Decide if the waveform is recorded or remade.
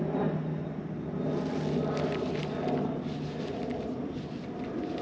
recorded